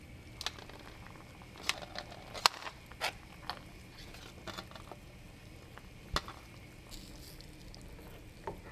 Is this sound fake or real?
real